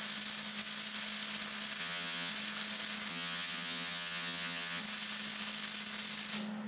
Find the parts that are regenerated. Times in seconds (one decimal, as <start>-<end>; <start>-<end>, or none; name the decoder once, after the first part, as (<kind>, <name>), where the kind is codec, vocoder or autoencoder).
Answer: 1.8-2.3 (vocoder, HiFi-GAN); 3.1-4.8